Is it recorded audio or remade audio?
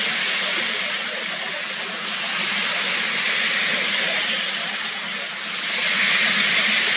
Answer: recorded